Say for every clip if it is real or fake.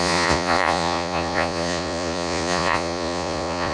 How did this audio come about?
fake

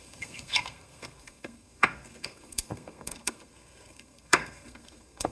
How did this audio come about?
fake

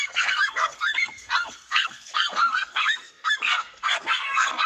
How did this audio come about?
fake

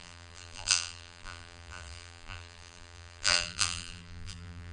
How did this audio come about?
fake